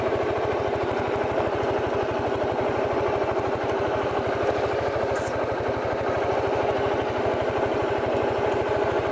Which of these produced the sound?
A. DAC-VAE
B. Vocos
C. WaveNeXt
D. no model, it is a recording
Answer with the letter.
D